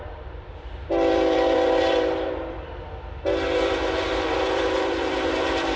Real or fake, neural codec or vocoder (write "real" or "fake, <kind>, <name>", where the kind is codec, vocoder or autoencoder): fake, vocoder, BigVGAN v2